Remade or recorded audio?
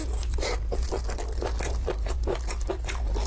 recorded